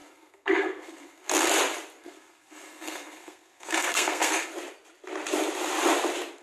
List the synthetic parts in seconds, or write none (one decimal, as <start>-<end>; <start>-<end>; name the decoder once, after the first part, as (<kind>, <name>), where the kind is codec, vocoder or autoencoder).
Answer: 0.0-1.3 (codec, SNAC); 2.0-4.5